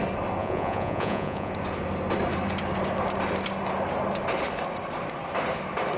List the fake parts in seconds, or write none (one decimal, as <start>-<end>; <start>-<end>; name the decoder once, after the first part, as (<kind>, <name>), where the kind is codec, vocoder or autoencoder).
0.4-1.5 (vocoder, Vocos)